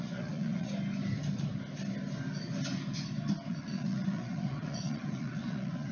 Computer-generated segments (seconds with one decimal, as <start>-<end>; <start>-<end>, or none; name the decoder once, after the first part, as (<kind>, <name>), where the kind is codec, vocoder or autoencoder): 0.0-0.7 (vocoder, Vocos); 3.5-5.9